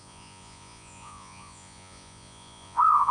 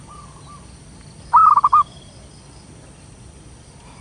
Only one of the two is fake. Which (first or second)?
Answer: first